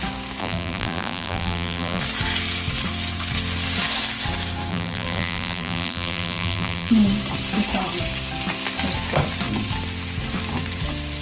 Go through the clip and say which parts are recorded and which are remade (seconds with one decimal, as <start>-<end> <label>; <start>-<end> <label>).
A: 0.0-0.4 recorded; 0.4-2.0 remade; 2.0-4.7 recorded; 4.7-6.9 remade; 6.9-11.2 recorded